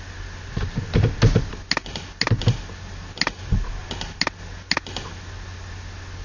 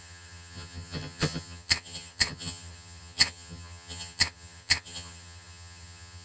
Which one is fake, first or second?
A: second